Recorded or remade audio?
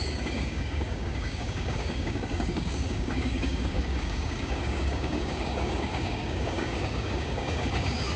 remade